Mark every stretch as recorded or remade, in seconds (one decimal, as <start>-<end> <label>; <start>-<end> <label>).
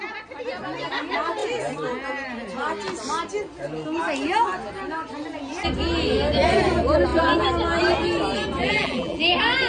0.0-8.6 recorded; 8.6-9.2 remade; 9.2-9.7 recorded